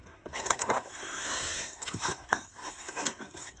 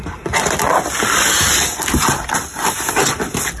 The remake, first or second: first